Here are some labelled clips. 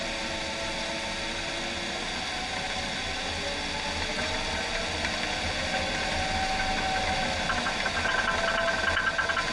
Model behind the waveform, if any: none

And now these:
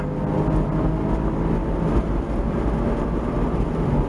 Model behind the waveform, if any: none